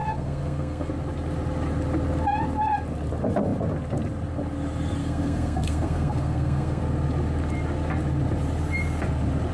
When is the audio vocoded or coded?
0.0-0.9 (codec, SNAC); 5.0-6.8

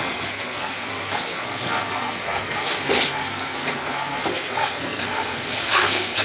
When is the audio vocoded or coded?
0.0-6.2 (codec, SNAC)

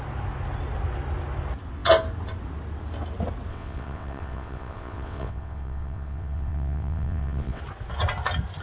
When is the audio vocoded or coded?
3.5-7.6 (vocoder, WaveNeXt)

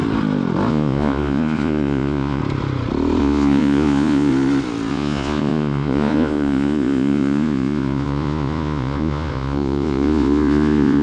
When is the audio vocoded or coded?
0.7-2.4 (vocoder, Vocos); 3.2-4.3; 4.9-11.0

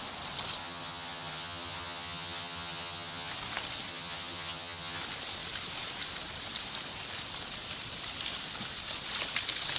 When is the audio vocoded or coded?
0.6-3.3 (vocoder, HiFi-GAN); 3.9-5.0

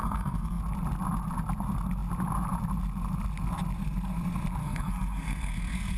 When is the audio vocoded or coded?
0.0-0.6 (codec, SNAC); 4.6-6.0